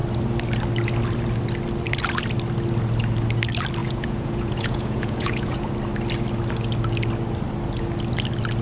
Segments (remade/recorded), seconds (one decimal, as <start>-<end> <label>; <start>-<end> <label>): 0.0-3.8 recorded; 3.8-5.7 remade; 5.7-8.6 recorded